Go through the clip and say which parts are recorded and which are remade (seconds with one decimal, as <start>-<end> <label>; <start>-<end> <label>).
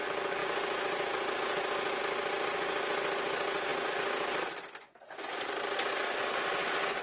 0.0-0.4 recorded; 0.4-2.0 remade; 2.0-7.0 recorded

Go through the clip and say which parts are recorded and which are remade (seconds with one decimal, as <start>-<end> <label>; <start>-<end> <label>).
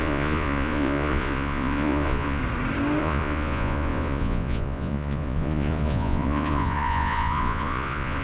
0.0-2.4 remade; 2.4-3.0 recorded; 3.0-8.2 remade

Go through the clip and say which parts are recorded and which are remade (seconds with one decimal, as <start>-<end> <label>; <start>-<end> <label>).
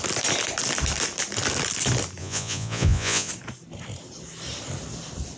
0.0-2.2 recorded; 2.2-3.3 remade; 3.3-5.4 recorded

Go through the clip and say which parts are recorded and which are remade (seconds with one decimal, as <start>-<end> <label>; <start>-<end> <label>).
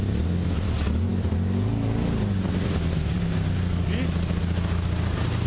0.0-5.5 recorded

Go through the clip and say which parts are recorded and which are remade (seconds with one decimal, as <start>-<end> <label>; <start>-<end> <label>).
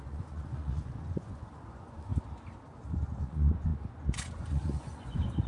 0.0-2.1 remade; 2.1-3.2 recorded; 3.2-5.5 remade